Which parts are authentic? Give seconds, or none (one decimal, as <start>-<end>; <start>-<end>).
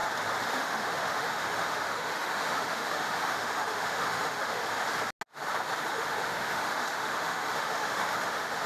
0.0-0.5; 4.6-5.9